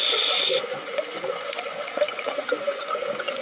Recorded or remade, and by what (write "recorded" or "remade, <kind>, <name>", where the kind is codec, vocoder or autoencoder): remade, vocoder, Vocos